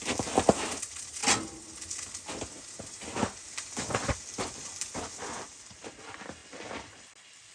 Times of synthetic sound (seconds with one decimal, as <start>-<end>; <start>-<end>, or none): none